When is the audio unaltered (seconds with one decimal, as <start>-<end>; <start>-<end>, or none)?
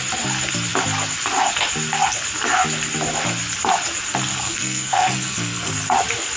0.0-4.4; 5.7-6.4